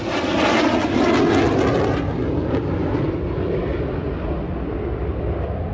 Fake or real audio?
real